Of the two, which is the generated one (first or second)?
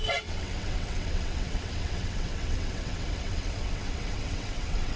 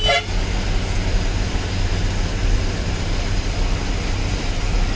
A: first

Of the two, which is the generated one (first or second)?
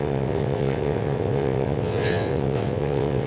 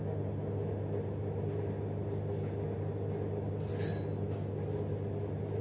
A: first